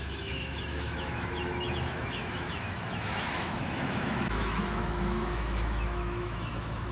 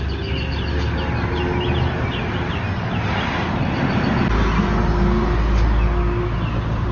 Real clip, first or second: second